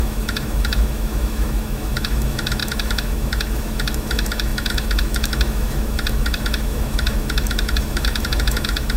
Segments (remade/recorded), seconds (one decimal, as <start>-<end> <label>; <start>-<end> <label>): 0.0-9.0 remade